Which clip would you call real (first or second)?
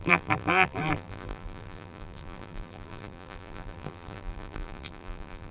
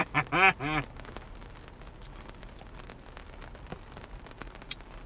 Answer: second